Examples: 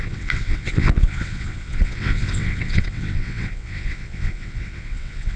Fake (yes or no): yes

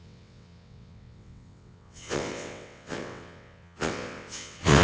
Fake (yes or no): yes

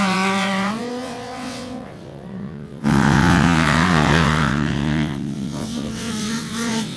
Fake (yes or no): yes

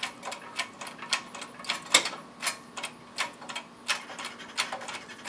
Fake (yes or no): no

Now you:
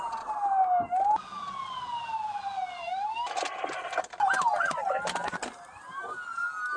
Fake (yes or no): no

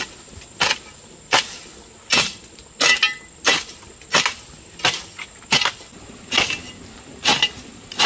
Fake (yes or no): no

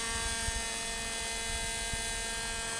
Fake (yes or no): no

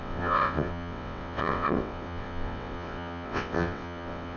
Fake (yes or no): yes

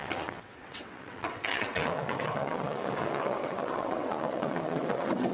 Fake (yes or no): yes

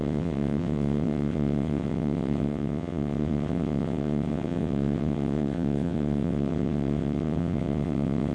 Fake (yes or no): yes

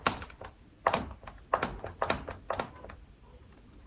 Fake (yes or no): no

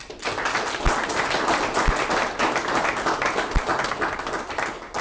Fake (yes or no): no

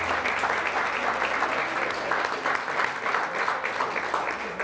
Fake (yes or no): no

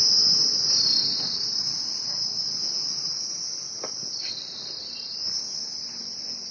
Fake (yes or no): no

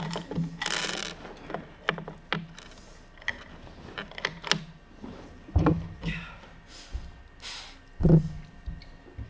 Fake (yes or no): no